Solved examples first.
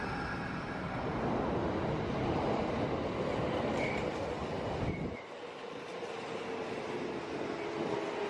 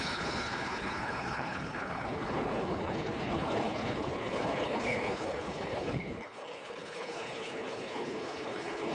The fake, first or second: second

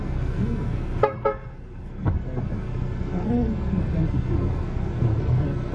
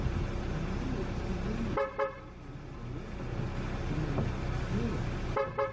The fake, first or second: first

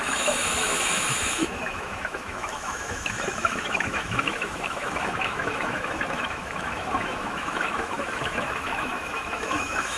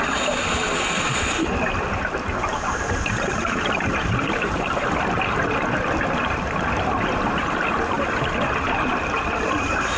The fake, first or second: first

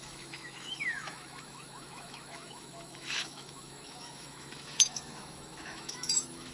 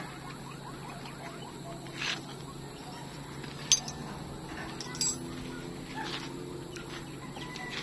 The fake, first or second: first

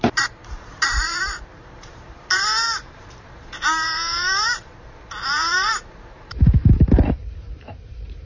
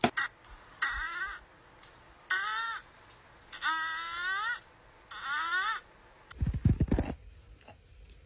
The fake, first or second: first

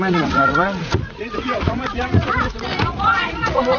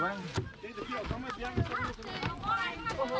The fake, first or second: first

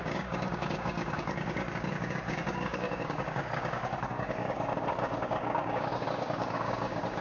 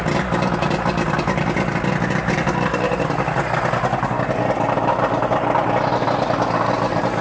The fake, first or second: first